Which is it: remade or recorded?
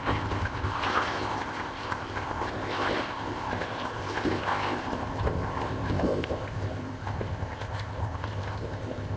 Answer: remade